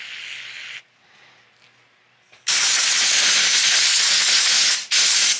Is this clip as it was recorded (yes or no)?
yes